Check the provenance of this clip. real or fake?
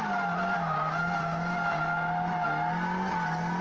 real